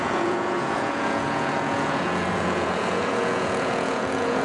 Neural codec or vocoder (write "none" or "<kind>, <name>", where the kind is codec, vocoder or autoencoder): vocoder, Vocos